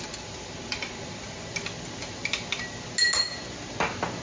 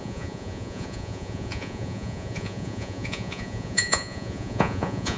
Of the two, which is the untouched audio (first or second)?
first